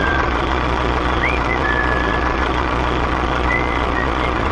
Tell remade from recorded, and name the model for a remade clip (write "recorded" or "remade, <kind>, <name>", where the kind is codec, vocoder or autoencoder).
remade, vocoder, Vocos